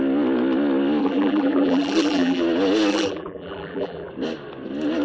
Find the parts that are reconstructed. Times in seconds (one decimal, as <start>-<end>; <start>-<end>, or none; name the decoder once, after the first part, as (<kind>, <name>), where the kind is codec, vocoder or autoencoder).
1.0-2.4 (vocoder, BigVGAN v2); 2.9-4.1